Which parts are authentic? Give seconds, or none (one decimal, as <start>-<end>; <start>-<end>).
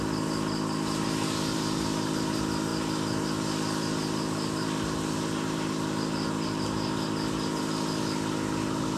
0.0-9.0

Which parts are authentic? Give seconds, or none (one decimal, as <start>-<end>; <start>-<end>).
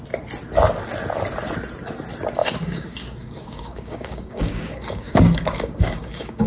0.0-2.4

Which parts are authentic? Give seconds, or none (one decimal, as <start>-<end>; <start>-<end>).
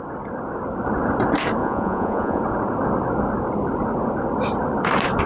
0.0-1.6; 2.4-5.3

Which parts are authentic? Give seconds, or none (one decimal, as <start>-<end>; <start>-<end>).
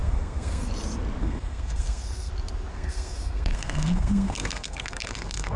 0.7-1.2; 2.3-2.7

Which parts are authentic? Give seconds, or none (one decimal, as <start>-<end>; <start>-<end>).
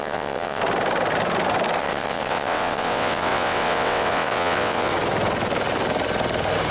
0.6-1.8; 4.9-6.7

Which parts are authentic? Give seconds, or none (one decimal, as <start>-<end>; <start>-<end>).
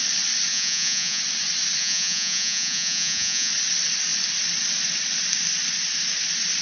0.0-0.5; 1.2-1.8; 3.5-6.6